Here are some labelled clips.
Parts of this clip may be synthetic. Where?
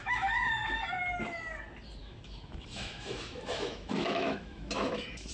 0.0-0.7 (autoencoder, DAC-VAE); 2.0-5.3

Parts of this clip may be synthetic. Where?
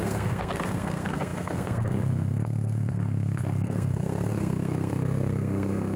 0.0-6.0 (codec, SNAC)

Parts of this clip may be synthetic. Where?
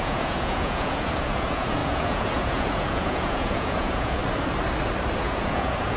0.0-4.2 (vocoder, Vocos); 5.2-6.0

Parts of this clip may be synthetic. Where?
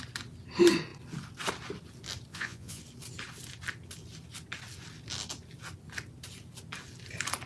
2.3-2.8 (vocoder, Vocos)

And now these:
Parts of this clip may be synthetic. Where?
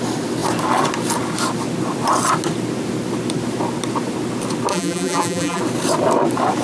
4.7-5.6 (vocoder, BigVGAN v2)